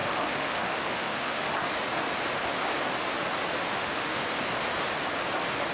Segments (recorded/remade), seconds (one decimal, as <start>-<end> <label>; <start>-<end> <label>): 0.0-1.4 remade; 1.4-3.7 recorded; 3.7-4.2 remade; 4.2-5.7 recorded